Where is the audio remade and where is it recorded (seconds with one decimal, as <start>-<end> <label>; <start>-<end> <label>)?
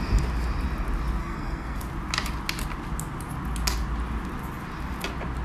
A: 0.0-1.2 recorded; 1.2-1.8 remade; 1.8-5.4 recorded